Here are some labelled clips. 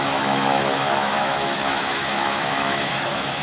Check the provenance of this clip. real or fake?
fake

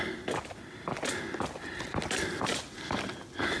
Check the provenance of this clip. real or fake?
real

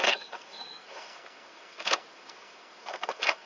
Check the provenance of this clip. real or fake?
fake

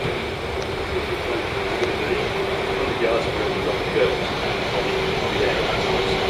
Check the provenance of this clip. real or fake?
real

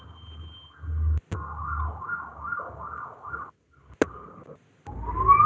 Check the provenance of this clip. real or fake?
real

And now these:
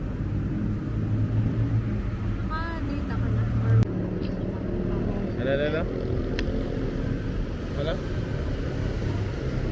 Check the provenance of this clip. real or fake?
real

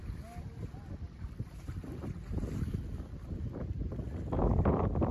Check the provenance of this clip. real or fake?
real